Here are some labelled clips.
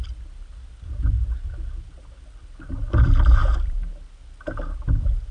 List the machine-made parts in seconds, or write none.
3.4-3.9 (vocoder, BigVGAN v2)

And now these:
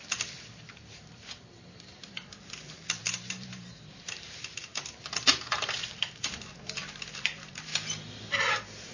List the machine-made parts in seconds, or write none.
0.0-7.7 (vocoder, BigVGAN v2); 8.4-8.9

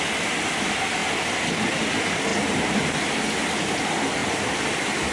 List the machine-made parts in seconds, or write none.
2.3-2.8 (vocoder, BigVGAN v2); 4.2-5.1

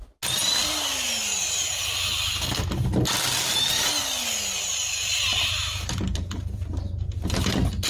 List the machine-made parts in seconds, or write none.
5.3-7.5 (vocoder, BigVGAN v2)

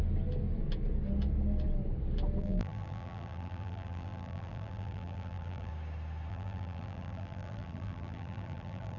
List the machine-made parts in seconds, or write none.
2.4-5.7 (vocoder, BigVGAN v2); 6.3-9.0

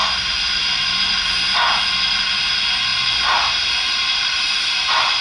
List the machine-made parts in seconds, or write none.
0.0-1.0 (vocoder, BigVGAN v2); 2.9-5.2

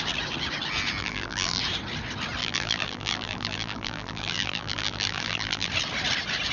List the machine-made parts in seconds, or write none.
1.0-1.6 (vocoder, BigVGAN v2); 2.4-5.7